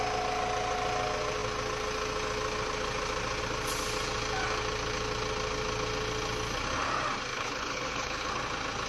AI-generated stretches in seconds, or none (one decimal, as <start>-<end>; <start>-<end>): 7.3-8.3